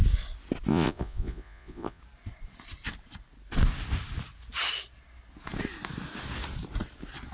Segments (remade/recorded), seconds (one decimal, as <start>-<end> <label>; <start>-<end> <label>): 0.0-0.7 recorded; 0.7-2.0 remade; 2.0-7.3 recorded